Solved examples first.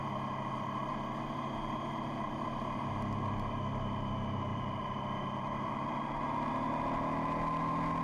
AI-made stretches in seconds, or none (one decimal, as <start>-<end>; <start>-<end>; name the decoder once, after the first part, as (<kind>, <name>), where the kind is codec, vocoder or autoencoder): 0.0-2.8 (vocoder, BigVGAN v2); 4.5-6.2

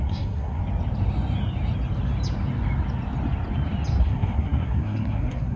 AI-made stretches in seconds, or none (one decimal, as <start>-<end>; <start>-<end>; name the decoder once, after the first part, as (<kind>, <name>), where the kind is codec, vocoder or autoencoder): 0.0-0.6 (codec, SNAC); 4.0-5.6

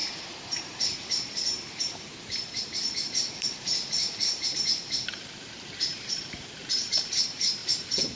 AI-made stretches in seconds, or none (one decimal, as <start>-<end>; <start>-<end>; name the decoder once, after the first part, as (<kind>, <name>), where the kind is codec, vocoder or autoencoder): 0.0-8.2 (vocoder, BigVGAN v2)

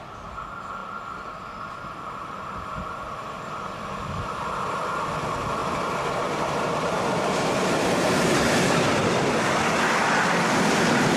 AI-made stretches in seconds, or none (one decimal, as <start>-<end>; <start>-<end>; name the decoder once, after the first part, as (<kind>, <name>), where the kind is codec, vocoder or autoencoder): 5.6-8.9 (vocoder, BigVGAN v2)

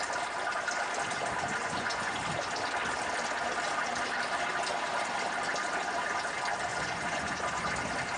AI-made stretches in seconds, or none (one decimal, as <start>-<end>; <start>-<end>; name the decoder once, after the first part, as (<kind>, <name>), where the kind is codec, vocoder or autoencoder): 1.6-2.2 (vocoder, Vocos); 6.7-7.7

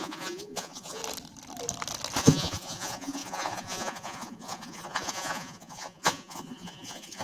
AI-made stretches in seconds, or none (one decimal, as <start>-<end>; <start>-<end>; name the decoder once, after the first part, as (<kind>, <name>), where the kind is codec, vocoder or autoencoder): 0.0-1.0 (vocoder, Vocos); 2.2-7.2